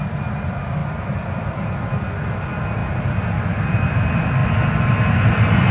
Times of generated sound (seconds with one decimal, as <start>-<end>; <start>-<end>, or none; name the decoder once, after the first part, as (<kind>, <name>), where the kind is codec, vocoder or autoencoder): 0.8-1.9 (vocoder, BigVGAN v2)

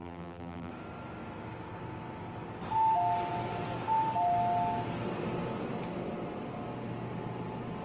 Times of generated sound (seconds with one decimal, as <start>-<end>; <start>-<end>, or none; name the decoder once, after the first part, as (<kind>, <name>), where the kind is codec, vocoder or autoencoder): 0.0-0.7 (vocoder, BigVGAN v2)

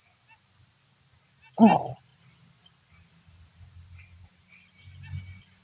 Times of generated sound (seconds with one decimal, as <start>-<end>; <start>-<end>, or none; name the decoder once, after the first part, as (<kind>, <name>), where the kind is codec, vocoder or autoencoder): none

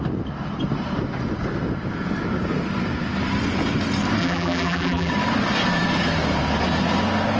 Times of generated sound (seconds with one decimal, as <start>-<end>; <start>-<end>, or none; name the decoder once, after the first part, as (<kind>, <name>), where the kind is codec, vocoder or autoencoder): 4.2-5.1 (vocoder, BigVGAN v2)

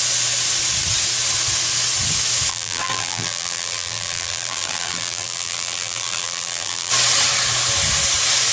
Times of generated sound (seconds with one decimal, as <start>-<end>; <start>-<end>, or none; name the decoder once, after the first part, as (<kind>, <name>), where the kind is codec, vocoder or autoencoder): 2.5-6.9 (vocoder, BigVGAN v2)

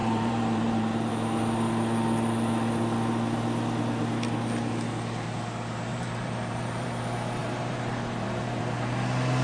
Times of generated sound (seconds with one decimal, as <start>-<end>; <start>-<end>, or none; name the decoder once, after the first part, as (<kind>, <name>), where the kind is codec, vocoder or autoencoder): 0.0-1.1 (vocoder, BigVGAN v2); 5.9-7.0; 7.4-8.6

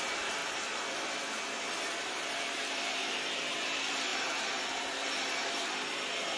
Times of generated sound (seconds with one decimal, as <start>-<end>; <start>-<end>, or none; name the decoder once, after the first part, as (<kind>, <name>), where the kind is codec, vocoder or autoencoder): 0.0-4.1 (vocoder, BigVGAN v2); 5.2-6.4

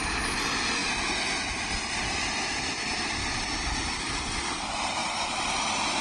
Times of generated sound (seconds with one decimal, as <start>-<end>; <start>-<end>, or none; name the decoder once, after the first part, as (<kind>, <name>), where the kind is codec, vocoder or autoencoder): 3.2-4.4 (vocoder, BigVGAN v2); 5.0-5.6